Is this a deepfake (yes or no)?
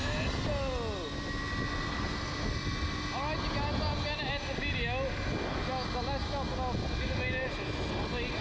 no